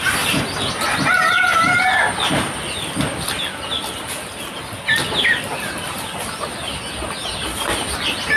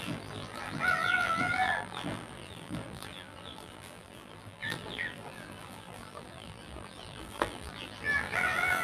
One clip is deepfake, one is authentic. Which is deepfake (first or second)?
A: second